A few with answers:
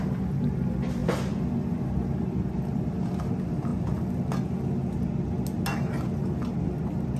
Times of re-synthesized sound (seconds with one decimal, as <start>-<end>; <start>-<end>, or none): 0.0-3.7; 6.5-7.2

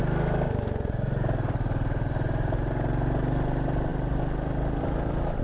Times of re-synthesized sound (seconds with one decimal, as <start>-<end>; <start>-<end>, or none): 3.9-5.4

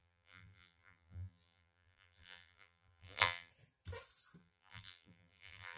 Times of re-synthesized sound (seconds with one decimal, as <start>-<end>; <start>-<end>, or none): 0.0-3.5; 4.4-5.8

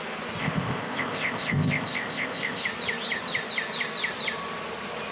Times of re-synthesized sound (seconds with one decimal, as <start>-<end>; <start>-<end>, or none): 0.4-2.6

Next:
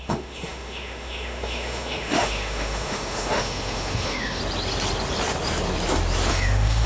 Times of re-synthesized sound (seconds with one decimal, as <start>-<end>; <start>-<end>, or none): 0.0-4.4; 6.3-6.9